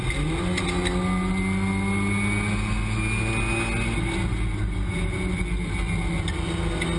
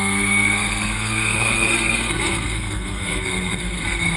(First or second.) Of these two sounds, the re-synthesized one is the second